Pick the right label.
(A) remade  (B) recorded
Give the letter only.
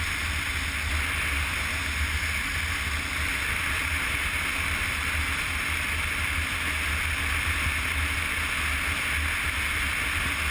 B